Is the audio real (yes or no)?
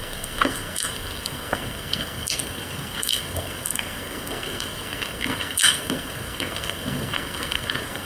no